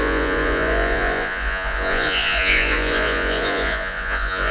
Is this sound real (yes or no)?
no